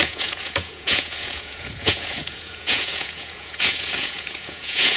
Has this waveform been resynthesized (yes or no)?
yes